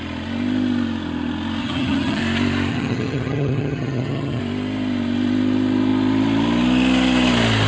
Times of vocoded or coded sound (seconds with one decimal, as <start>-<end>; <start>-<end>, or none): 1.6-2.2; 2.7-4.4